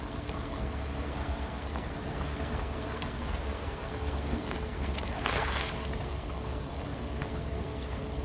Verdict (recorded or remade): remade